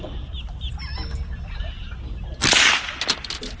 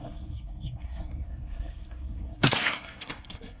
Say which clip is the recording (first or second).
first